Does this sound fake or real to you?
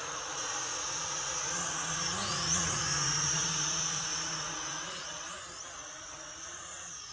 fake